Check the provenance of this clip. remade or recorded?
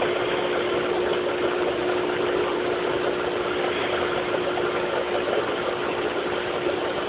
recorded